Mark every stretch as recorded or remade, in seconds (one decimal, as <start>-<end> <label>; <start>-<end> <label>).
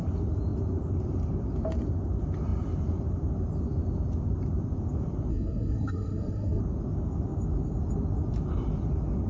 0.0-5.3 recorded; 5.3-6.6 remade; 6.6-9.3 recorded